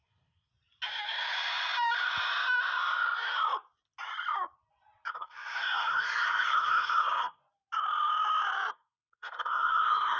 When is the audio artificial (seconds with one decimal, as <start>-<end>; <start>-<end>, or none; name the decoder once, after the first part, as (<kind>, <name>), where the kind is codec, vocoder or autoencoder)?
0.0-0.5 (codec, SNAC); 5.1-7.4; 8.7-10.2